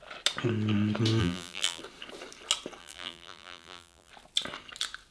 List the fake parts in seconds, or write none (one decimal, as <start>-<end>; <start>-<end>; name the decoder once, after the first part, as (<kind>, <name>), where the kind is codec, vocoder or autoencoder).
1.2-1.8 (vocoder, BigVGAN v2); 2.8-4.1